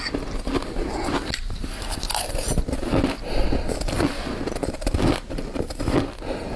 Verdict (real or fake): real